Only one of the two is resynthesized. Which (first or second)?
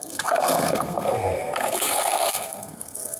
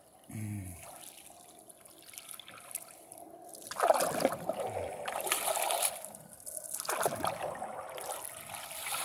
first